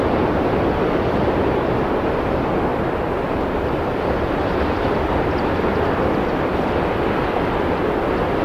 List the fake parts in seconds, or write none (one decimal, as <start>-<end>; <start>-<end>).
0.0-2.7; 3.4-8.4

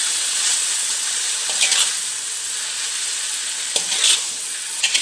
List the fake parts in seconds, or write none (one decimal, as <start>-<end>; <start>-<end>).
0.0-1.4; 4.4-5.0

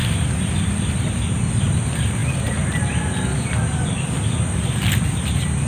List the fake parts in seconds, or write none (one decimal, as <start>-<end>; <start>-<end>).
none

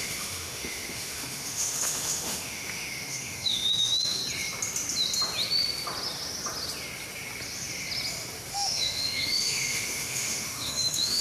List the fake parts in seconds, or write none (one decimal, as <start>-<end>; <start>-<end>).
0.0-4.2; 8.5-11.2

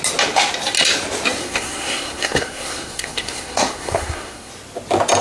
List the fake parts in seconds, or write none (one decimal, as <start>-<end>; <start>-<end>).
1.4-4.5

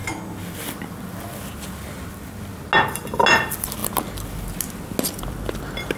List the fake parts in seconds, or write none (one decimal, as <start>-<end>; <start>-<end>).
none

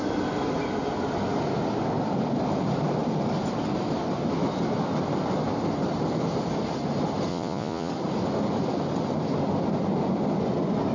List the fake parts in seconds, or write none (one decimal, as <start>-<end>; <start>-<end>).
7.3-7.9

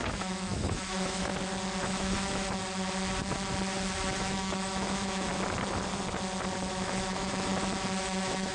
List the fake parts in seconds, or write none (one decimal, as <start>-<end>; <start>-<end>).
0.0-1.3; 1.8-2.6; 4.2-5.3; 6.7-7.5; 8.0-8.5